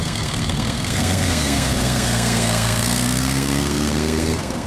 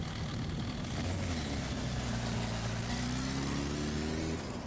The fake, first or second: first